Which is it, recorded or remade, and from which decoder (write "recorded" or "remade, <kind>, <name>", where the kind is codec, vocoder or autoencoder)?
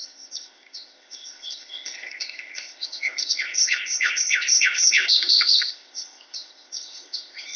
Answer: remade, codec, ZipCodec